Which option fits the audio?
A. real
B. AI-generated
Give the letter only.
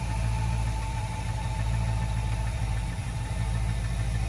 B